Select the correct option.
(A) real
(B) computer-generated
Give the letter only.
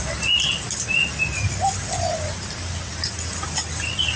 A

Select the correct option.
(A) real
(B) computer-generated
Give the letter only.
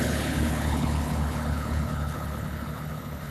B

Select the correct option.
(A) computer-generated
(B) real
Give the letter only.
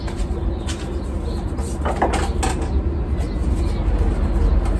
B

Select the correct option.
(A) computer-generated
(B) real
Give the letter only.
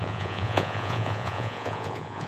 A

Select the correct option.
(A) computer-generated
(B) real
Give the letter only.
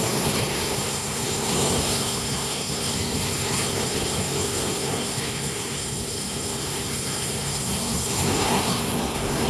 A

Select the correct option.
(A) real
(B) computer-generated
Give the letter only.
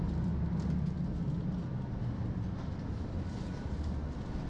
A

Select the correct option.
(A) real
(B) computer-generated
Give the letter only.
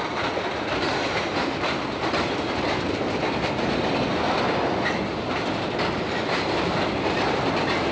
A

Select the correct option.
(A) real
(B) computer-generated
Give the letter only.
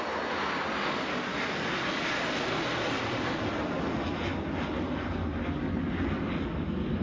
A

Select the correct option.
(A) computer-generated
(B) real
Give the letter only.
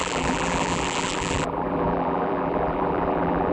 A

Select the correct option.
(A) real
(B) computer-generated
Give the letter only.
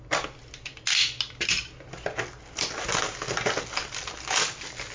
A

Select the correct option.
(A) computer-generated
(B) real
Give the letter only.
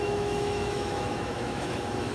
A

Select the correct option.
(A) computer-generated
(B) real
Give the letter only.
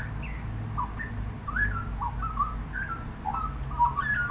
B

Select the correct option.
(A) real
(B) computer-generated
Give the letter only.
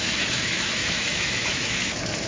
B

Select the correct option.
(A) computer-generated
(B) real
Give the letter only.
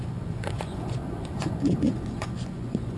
A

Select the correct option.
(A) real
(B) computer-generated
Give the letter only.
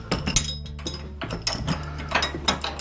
A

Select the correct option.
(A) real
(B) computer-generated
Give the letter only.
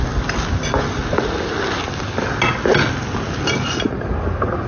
A